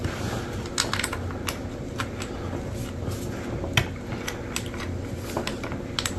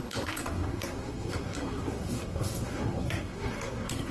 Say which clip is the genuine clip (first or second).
first